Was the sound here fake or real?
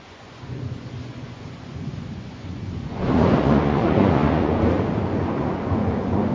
fake